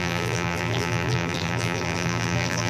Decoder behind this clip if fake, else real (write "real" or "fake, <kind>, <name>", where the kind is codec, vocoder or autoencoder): fake, vocoder, BigVGAN v2